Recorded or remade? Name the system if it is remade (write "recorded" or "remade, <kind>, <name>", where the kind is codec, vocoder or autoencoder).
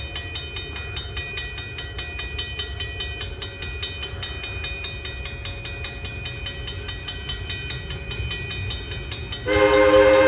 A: recorded